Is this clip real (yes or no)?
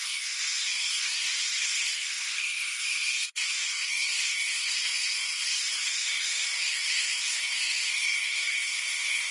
no